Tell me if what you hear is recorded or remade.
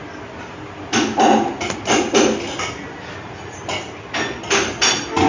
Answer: recorded